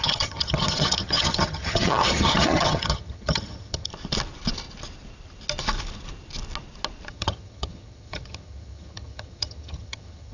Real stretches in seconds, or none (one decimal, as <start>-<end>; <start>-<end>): 3.9-7.1